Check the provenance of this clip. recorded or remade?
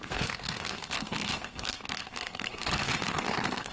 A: remade